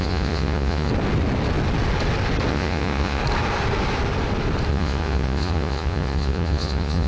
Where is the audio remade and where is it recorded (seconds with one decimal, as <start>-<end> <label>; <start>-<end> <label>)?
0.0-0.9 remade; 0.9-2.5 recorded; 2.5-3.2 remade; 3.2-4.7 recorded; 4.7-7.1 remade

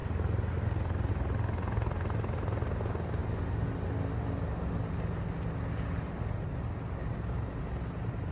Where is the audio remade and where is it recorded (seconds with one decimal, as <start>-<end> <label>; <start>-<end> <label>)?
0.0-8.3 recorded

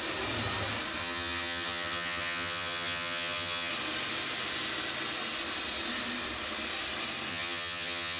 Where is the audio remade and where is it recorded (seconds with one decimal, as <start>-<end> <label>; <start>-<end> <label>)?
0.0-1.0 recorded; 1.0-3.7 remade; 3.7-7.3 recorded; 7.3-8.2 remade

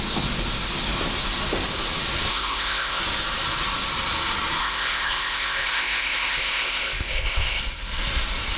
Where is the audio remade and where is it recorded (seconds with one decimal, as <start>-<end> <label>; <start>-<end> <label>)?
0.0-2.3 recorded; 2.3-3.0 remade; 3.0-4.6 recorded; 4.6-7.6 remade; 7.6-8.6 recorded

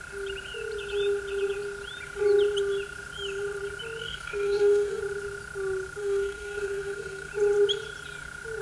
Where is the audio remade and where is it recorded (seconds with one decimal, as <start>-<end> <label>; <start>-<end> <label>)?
0.0-4.0 recorded; 4.0-5.0 remade; 5.0-6.0 recorded; 6.0-7.3 remade; 7.3-8.6 recorded